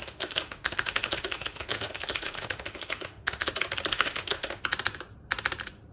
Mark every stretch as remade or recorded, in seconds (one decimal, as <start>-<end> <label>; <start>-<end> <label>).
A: 0.0-3.5 remade; 3.5-3.9 recorded; 3.9-4.6 remade; 4.6-5.9 recorded